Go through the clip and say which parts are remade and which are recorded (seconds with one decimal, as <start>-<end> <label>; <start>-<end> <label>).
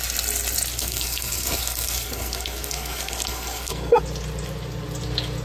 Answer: 0.0-0.8 recorded; 0.8-4.0 remade; 4.0-5.4 recorded